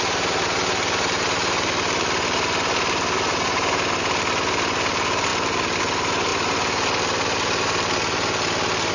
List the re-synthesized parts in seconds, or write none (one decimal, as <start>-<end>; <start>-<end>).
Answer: 3.3-4.0